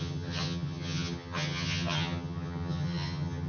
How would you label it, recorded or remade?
remade